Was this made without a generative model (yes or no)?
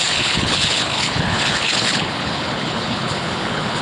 no